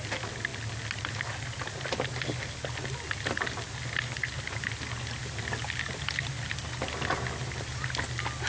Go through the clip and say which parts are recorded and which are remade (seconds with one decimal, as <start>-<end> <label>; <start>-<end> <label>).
0.0-8.5 recorded